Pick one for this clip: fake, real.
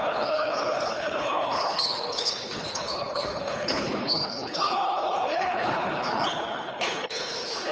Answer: fake